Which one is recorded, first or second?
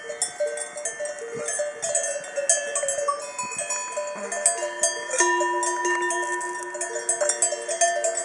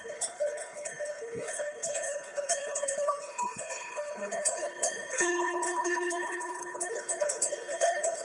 first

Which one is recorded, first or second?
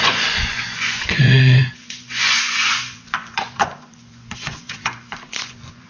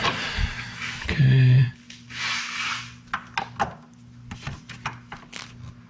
second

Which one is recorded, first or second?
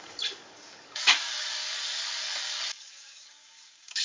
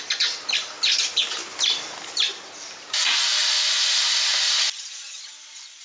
second